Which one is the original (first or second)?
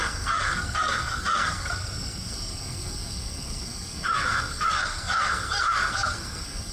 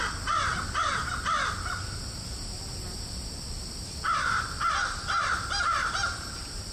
second